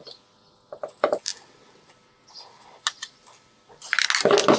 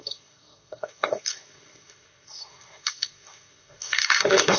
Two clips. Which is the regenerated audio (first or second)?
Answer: second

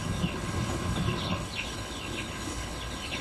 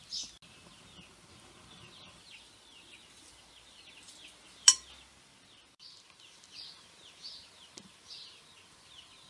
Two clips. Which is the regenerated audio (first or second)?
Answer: first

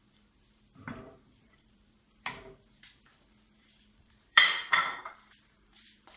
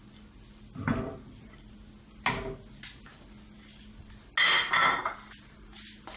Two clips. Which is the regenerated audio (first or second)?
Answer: first